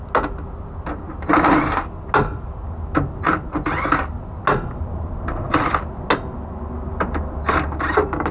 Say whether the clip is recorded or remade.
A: recorded